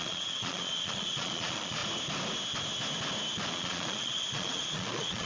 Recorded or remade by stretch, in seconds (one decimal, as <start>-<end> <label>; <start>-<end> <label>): 0.0-1.8 remade; 1.8-3.5 recorded; 3.5-5.3 remade